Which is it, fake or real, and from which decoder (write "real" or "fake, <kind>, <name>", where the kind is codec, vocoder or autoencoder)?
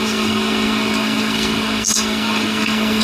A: fake, codec, SNAC